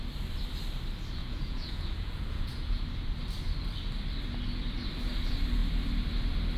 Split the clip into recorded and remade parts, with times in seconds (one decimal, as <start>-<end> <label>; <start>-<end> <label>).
0.0-1.2 recorded; 1.2-2.8 remade; 2.8-6.6 recorded